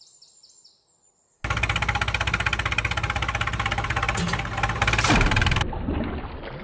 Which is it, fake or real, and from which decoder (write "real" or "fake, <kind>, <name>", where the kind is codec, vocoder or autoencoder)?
real